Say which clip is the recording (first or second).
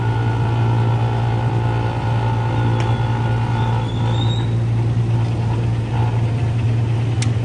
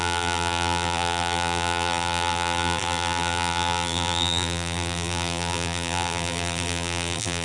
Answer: first